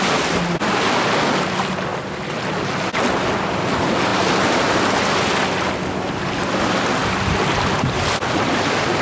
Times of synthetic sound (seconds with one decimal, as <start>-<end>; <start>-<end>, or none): none